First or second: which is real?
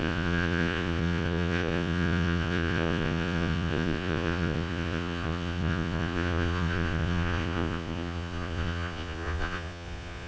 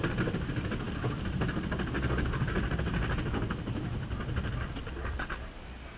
second